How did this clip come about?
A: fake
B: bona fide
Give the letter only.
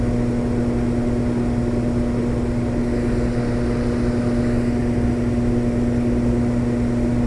B